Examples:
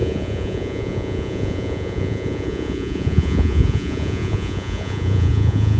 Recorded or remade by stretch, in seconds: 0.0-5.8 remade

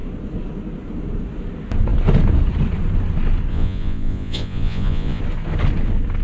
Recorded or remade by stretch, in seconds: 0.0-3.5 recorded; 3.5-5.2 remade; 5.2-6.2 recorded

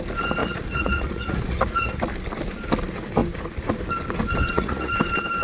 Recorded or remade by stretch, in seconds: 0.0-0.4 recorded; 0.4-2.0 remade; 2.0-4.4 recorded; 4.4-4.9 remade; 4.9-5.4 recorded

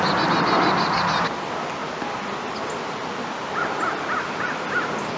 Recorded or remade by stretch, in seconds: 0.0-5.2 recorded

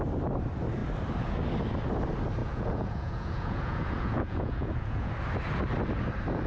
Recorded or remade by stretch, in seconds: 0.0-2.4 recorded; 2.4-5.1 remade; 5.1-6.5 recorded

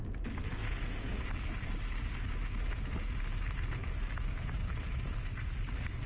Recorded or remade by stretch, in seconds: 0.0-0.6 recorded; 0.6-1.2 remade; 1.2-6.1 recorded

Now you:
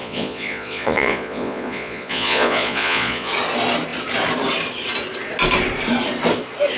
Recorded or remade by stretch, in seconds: 0.0-3.3 remade; 3.3-6.8 recorded

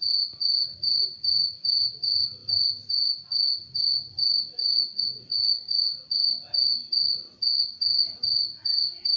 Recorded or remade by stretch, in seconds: 0.0-4.6 recorded; 4.6-5.9 remade; 5.9-9.2 recorded